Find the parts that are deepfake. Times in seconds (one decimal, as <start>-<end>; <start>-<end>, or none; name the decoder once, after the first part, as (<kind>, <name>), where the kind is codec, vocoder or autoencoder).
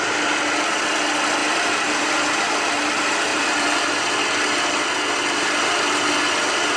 1.4-2.9 (vocoder, BigVGAN v2); 3.3-3.9